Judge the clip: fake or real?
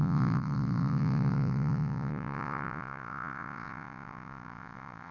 fake